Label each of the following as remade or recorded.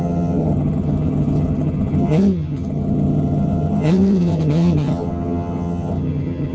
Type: remade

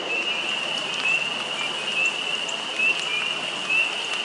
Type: recorded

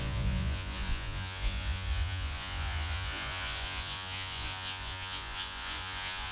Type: remade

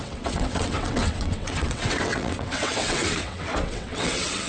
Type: remade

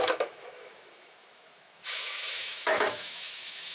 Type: remade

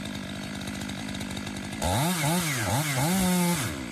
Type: recorded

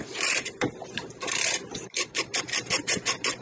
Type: remade